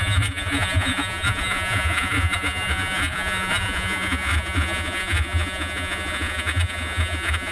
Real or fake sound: fake